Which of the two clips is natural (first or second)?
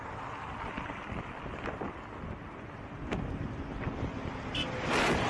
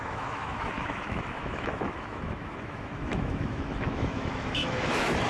first